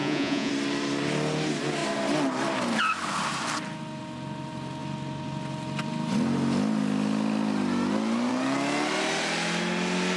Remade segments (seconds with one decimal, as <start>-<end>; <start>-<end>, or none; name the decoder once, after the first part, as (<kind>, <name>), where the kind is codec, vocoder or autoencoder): 0.0-0.5 (vocoder, Vocos)